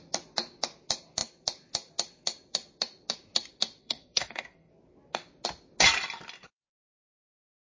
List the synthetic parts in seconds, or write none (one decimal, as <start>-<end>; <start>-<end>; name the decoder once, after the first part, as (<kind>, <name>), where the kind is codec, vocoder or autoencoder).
3.8-4.7 (codec, SNAC)